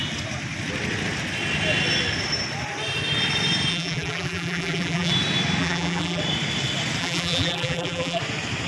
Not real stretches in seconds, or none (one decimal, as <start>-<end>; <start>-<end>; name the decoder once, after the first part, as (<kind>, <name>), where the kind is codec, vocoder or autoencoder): 3.7-5.1 (vocoder, BigVGAN v2); 5.6-6.2; 7.0-8.2